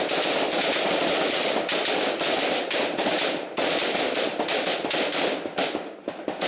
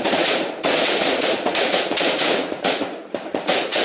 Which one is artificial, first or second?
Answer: second